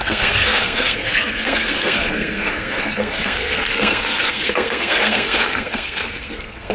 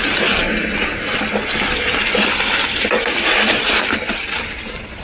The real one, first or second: second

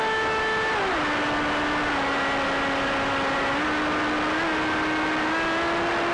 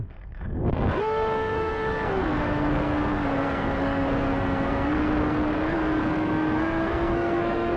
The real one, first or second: first